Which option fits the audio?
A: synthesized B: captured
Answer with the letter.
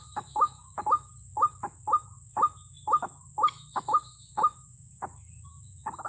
A